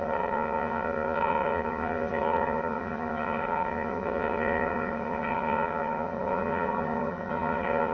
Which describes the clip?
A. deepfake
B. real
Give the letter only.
A